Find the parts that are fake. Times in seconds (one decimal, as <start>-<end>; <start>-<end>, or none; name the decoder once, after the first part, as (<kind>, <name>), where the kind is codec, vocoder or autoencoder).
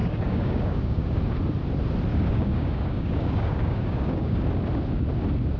0.0-1.2 (codec, DAC); 2.1-4.5